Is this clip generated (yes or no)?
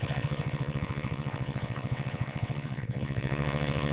yes